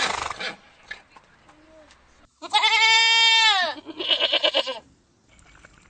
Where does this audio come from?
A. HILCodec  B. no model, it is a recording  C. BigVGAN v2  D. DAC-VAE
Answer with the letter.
B